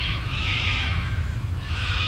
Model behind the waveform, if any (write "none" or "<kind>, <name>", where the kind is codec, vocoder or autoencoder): autoencoder, DAC-VAE